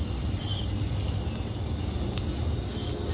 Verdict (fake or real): real